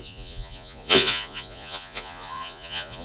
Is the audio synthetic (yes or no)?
yes